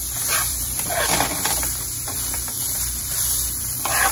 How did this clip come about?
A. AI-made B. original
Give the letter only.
A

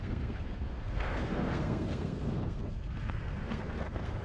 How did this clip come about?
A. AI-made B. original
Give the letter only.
A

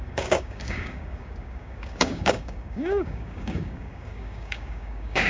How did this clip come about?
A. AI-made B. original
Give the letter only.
A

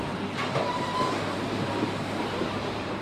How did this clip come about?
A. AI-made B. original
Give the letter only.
A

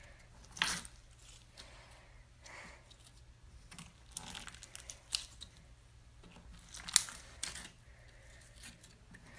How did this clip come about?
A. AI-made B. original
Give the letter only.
B